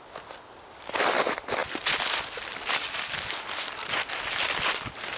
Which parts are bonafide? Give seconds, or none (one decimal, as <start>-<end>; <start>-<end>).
0.0-5.2